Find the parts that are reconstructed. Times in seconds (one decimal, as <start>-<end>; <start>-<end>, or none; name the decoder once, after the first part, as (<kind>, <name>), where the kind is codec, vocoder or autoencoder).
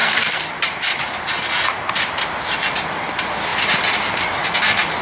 0.0-0.5 (codec, SNAC)